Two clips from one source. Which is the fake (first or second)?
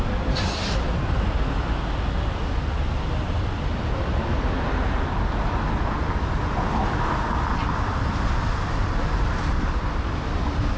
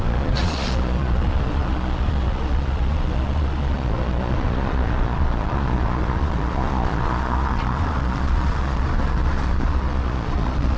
second